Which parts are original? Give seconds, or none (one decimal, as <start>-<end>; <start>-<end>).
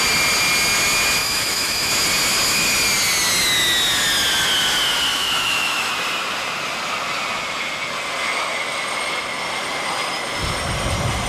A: 0.0-1.2; 1.9-5.1; 5.9-11.3